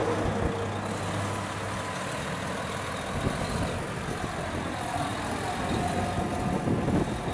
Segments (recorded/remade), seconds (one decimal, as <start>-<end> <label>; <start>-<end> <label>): 0.0-7.3 recorded